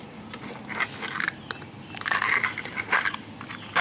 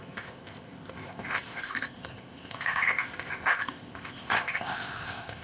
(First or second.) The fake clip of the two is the second